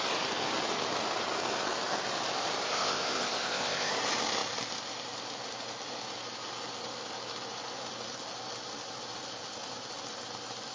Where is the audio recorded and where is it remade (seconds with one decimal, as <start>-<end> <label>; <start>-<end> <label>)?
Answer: 0.0-2.7 recorded; 2.7-3.9 remade; 3.9-10.7 recorded

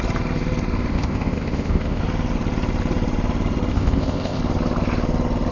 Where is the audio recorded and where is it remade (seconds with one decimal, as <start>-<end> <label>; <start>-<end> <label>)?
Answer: 0.0-0.9 recorded; 0.9-2.0 remade; 2.0-3.7 recorded; 3.7-4.4 remade; 4.4-5.5 recorded

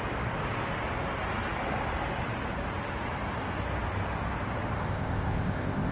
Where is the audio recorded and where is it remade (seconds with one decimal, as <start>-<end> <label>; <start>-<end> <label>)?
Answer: 0.0-4.9 recorded; 4.9-5.9 remade

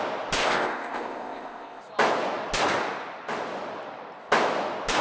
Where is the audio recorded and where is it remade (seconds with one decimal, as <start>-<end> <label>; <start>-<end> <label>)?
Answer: 0.0-0.4 recorded; 0.4-1.8 remade; 1.8-5.0 recorded

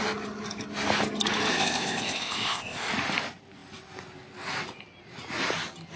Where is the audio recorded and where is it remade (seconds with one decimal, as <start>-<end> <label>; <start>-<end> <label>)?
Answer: 0.0-1.5 recorded; 1.5-2.9 remade; 2.9-6.0 recorded